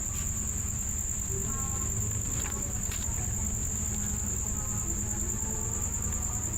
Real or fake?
real